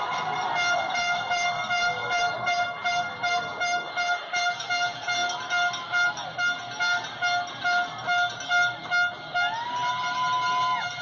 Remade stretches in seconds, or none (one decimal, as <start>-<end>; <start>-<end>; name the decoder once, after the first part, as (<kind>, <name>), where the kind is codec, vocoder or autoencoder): none